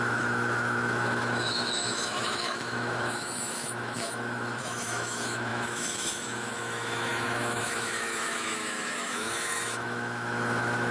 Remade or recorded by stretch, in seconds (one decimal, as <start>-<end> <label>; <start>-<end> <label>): 0.0-10.9 remade